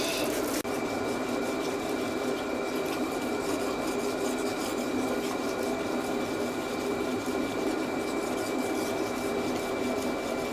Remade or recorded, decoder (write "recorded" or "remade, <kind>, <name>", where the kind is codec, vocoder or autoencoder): recorded